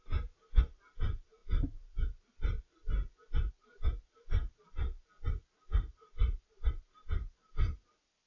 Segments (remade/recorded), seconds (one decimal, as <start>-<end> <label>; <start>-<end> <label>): 0.0-0.6 recorded; 0.6-8.3 remade